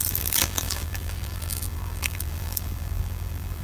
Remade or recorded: remade